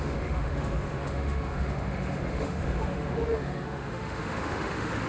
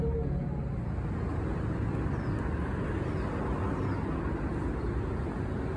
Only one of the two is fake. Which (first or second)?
first